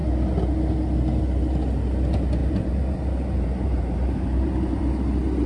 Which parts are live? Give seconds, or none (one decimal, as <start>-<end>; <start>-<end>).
0.0-2.4; 4.8-5.5